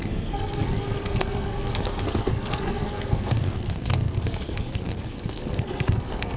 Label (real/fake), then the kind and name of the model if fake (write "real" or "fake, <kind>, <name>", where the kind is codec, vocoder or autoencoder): fake, codec, SNAC